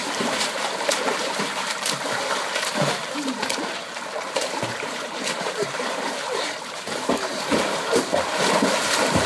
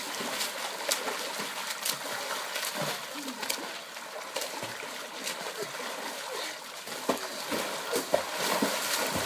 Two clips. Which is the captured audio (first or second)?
second